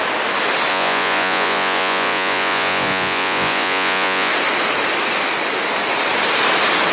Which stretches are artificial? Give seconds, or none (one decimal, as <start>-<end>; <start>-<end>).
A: 0.7-4.3